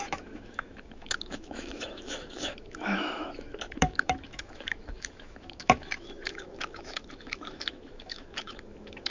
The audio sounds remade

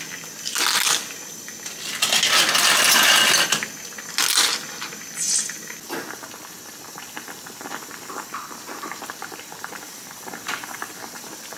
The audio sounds recorded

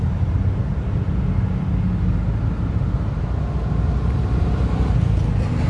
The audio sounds recorded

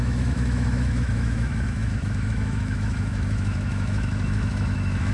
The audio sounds remade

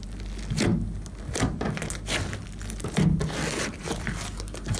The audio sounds recorded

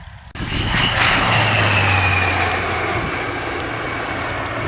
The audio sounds recorded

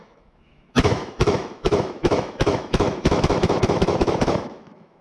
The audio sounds remade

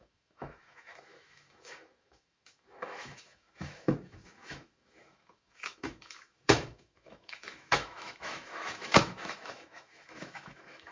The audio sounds remade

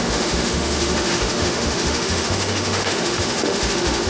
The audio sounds remade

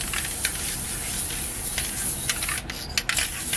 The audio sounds recorded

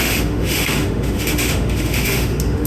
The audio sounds remade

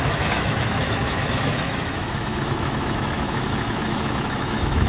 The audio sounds remade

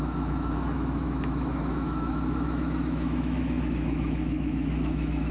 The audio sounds remade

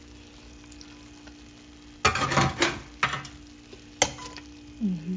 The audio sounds recorded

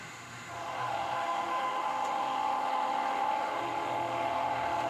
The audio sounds remade